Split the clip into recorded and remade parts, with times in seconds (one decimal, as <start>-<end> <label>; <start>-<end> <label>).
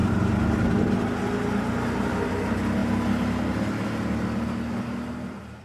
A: 0.0-5.6 recorded